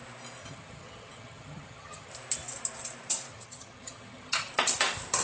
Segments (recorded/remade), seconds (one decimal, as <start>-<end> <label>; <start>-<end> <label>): 0.0-0.4 recorded; 0.4-2.1 remade; 2.1-3.3 recorded; 3.3-4.5 remade; 4.5-5.2 recorded